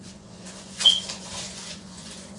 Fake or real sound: fake